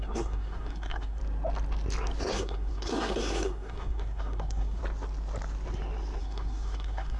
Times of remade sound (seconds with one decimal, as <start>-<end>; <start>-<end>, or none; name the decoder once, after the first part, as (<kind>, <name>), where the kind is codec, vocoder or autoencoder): 0.0-1.2 (codec, SNAC); 2.3-4.8; 6.2-7.2